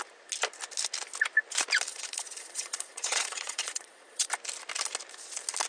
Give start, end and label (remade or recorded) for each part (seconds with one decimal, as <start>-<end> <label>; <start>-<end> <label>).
0.0-1.9 recorded; 1.9-4.3 remade; 4.3-5.7 recorded